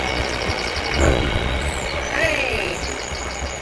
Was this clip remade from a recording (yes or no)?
yes